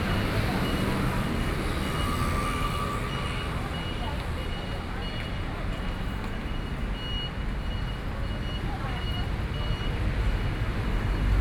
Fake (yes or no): no